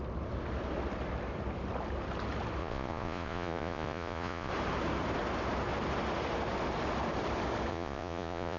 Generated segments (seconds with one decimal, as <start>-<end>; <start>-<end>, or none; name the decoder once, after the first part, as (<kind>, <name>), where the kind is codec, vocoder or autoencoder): 2.6-4.5 (vocoder, Vocos); 7.7-8.6